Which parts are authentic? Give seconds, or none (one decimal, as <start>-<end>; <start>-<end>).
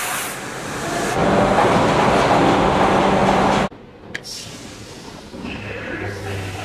0.0-1.2; 1.9-6.6